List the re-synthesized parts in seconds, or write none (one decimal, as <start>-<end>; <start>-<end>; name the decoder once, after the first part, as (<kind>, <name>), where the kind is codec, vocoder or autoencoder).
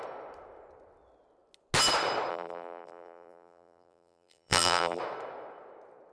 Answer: 2.3-5.0 (vocoder, BigVGAN v2)